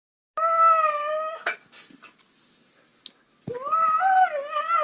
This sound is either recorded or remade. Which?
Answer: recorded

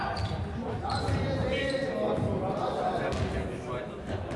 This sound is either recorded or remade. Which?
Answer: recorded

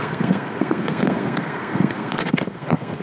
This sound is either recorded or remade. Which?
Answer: remade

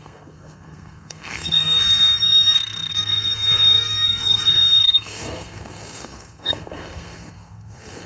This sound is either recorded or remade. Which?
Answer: remade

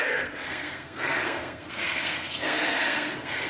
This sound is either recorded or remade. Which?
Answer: remade